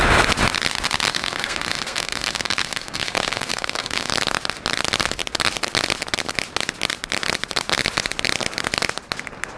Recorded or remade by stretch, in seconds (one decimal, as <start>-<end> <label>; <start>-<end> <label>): 0.0-1.1 recorded; 1.1-4.1 remade; 4.1-9.6 recorded